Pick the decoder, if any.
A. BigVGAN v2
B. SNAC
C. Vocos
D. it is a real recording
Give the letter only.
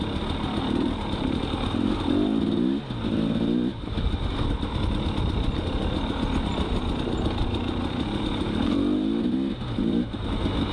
D